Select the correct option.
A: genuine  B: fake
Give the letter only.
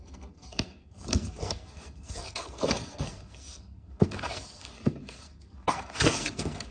B